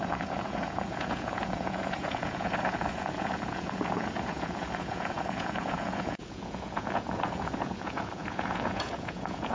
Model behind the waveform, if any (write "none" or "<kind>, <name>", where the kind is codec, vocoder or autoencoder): vocoder, Vocos